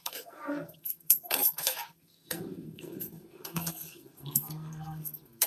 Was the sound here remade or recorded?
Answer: remade